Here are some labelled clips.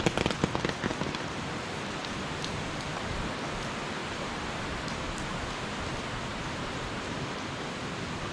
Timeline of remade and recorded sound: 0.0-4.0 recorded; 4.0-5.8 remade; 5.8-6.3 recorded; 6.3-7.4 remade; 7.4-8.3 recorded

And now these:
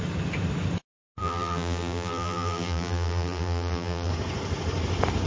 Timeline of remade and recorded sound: 0.0-1.2 recorded; 1.2-4.1 remade; 4.1-5.3 recorded

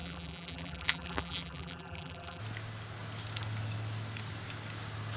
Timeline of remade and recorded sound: 0.0-2.4 remade; 2.4-5.2 recorded

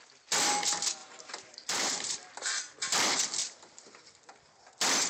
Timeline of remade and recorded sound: 0.0-1.0 recorded; 1.0-2.6 remade; 2.6-3.4 recorded; 3.4-4.1 remade; 4.1-5.1 recorded

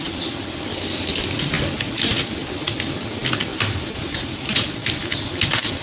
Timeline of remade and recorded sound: 0.0-3.5 recorded; 3.5-4.7 remade; 4.7-5.8 recorded

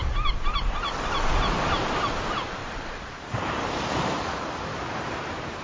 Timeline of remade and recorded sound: 0.0-1.4 remade; 1.4-2.6 recorded; 2.6-4.2 remade; 4.2-4.7 recorded; 4.7-5.6 remade

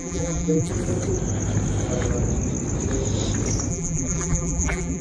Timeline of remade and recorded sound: 0.0-0.7 remade; 0.7-3.7 recorded; 3.7-5.0 remade

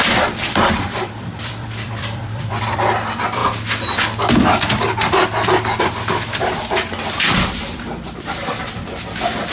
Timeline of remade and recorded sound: 0.0-3.4 remade; 3.4-7.1 recorded; 7.1-9.5 remade